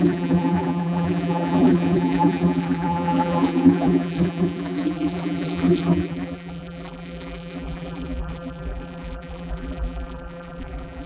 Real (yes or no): no